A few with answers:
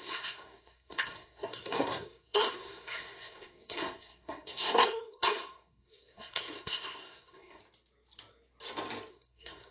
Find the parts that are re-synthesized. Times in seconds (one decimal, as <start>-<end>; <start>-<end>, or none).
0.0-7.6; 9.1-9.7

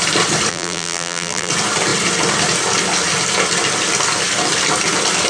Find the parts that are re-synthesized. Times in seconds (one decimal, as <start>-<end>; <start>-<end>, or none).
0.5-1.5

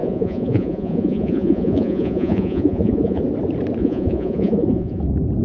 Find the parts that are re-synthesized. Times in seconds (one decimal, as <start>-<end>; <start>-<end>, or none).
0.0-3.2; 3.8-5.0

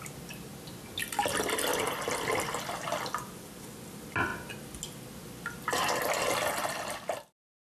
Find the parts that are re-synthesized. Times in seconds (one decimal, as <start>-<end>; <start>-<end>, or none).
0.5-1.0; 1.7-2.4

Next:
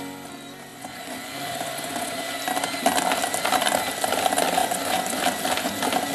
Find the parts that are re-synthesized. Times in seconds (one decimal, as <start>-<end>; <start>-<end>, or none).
0.7-2.4; 4.6-5.2

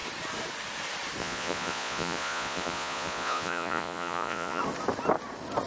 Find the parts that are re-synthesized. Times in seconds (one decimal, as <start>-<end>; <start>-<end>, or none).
1.2-4.6